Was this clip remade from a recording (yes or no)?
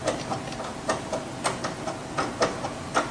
no